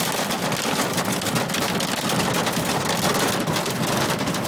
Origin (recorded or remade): recorded